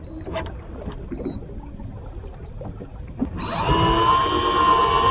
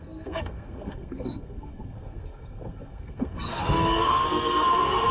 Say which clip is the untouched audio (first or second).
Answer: first